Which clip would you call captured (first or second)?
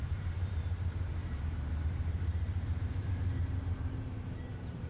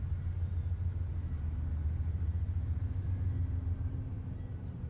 second